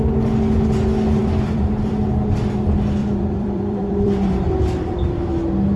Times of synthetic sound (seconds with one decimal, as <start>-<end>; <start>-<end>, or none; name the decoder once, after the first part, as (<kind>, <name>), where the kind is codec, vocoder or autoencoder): 1.2-1.9 (vocoder, BigVGAN v2); 3.0-4.5